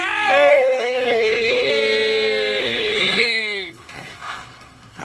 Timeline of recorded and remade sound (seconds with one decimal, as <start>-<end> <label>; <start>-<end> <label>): 0.0-0.5 recorded; 0.5-1.7 remade; 1.7-2.6 recorded; 2.6-5.0 remade